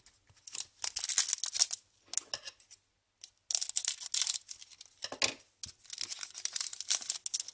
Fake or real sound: real